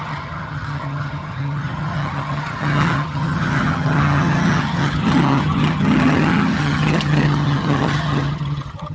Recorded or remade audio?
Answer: remade